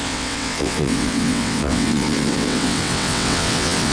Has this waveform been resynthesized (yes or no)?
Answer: yes